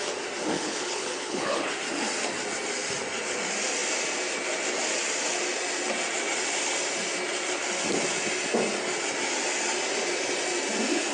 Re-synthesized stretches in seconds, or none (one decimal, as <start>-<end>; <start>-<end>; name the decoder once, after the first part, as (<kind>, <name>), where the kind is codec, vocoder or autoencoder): 0.4-1.7 (codec, HILCodec)